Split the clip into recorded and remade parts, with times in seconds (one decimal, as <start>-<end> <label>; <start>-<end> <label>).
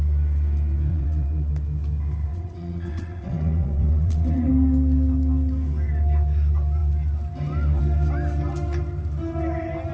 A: 0.0-0.9 recorded; 0.9-1.5 remade; 1.5-2.3 recorded; 2.3-4.5 remade; 4.5-9.9 recorded